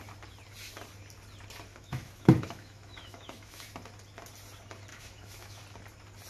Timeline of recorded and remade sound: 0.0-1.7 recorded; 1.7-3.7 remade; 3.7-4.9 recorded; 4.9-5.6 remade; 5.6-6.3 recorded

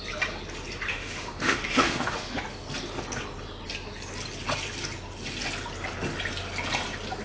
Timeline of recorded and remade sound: 0.0-0.9 recorded; 0.9-2.4 remade; 2.4-7.2 recorded

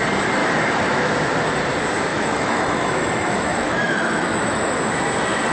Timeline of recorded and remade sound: 0.0-0.4 recorded; 0.4-1.1 remade; 1.1-2.1 recorded; 2.1-4.9 remade; 4.9-5.5 recorded